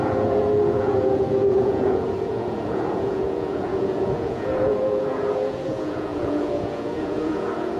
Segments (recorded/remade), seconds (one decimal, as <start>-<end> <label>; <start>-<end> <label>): 0.0-7.8 remade